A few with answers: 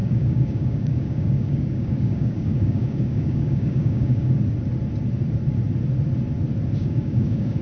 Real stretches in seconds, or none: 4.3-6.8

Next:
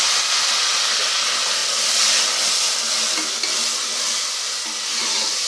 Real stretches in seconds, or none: 0.0-5.5

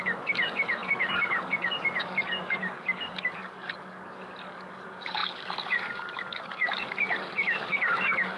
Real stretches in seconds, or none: none

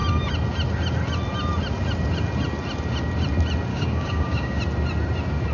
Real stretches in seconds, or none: 0.0-3.7; 4.6-5.5